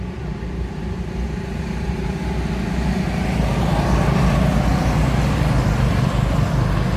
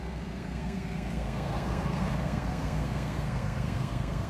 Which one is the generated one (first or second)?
second